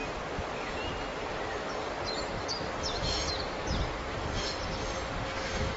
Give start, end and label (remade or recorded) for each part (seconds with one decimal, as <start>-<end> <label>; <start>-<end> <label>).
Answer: 0.0-1.1 recorded; 1.1-1.8 remade; 1.8-2.2 recorded; 2.2-2.7 remade; 2.7-5.8 recorded